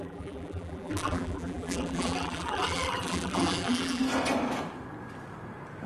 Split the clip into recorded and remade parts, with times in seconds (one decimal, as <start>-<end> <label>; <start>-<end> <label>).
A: 0.0-4.0 remade; 4.0-5.9 recorded